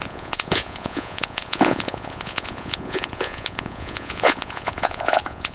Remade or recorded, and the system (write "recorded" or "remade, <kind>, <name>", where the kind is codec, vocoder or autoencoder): remade, vocoder, Vocos